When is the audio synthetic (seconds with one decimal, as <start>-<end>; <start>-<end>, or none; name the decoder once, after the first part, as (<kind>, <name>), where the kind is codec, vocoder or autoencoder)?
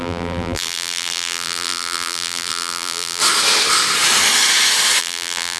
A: 0.0-3.2 (vocoder, BigVGAN v2); 5.0-5.6